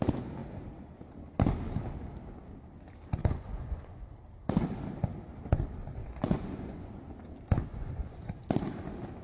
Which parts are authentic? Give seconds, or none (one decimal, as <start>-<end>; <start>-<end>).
0.0-3.2; 4.1-6.0; 6.9-7.7; 8.2-9.2